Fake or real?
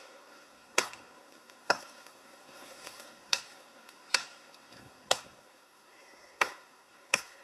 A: fake